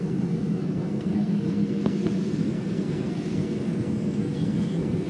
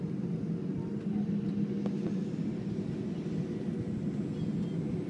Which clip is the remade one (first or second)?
first